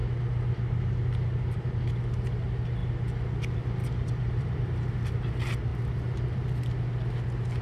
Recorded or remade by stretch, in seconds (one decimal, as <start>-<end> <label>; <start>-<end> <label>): 0.0-3.8 recorded; 3.8-4.9 remade; 4.9-5.7 recorded; 5.7-6.6 remade; 6.6-7.6 recorded